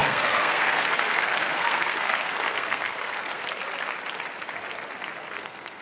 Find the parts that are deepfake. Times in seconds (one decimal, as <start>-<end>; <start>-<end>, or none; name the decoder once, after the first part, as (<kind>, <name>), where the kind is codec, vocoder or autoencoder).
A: 0.0-3.6 (codec, SNAC); 5.3-5.8